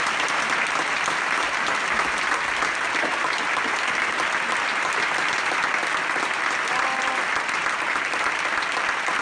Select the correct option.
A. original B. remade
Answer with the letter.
A